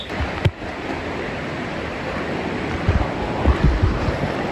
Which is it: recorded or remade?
recorded